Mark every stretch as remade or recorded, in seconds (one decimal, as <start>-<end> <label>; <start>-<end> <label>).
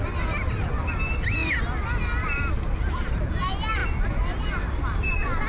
0.0-1.4 recorded; 1.4-3.1 remade; 3.1-3.8 recorded; 3.8-5.5 remade